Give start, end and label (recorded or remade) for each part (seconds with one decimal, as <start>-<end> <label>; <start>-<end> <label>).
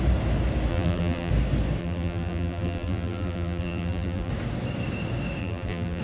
0.0-0.7 recorded; 0.7-1.3 remade; 1.3-1.8 recorded; 1.8-4.3 remade; 4.3-5.4 recorded; 5.4-6.0 remade